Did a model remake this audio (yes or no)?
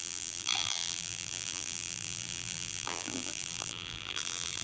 yes